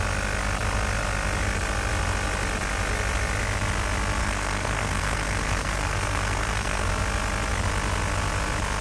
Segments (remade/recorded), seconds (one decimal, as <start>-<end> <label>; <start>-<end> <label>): 0.0-4.2 recorded; 4.2-6.9 remade; 6.9-8.8 recorded

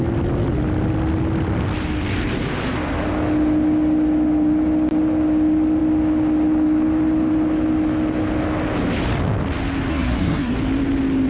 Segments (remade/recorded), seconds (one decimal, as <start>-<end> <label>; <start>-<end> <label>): 0.0-9.9 recorded; 9.9-10.5 remade; 10.5-11.3 recorded

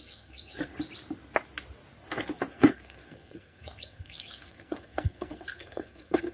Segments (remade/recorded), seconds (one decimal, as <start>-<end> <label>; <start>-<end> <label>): 0.0-0.7 remade; 0.7-2.5 recorded; 2.5-6.3 remade

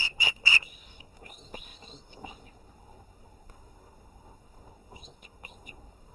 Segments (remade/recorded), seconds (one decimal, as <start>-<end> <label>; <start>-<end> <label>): 0.0-6.1 remade

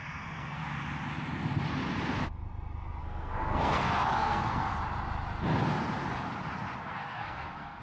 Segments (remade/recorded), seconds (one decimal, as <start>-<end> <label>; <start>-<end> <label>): 0.0-0.6 remade; 0.6-3.0 recorded; 3.0-4.7 remade; 4.7-6.8 recorded; 6.8-7.8 remade

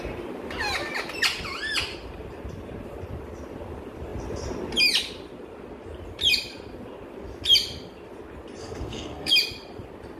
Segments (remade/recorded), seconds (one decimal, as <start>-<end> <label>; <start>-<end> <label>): 0.0-8.6 recorded; 8.6-9.3 remade; 9.3-10.2 recorded